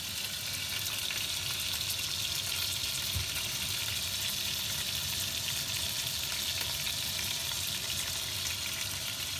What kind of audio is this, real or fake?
real